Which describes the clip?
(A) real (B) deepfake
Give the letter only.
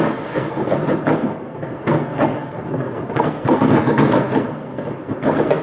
B